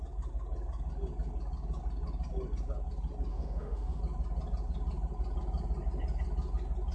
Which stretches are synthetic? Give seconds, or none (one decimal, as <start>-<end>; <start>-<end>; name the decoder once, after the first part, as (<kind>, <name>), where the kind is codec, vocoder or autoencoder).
3.3-4.0 (autoencoder, DAC-VAE)